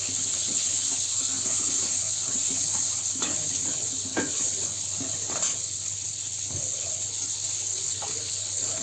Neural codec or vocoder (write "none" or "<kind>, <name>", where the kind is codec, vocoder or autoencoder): codec, HILCodec